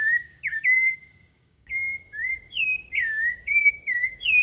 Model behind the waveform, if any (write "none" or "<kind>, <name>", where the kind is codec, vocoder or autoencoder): codec, DAC